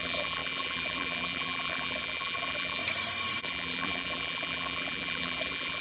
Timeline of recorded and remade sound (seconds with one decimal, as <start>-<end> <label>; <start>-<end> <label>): 0.0-2.8 remade; 2.8-3.4 recorded; 3.4-5.8 remade